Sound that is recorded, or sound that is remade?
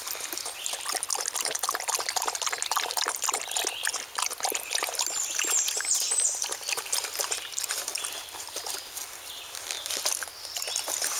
recorded